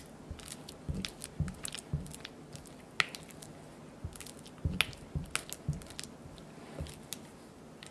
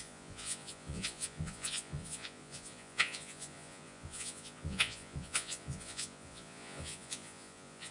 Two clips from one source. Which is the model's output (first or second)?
second